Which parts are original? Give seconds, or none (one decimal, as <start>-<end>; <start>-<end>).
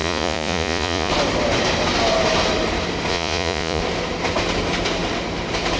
1.1-3.1; 3.8-5.8